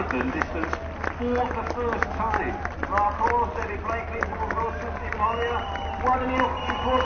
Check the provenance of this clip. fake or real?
real